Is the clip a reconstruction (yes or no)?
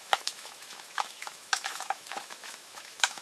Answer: yes